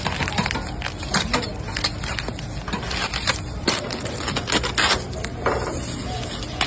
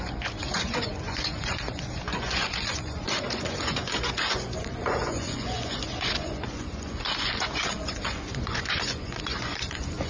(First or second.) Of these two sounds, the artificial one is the second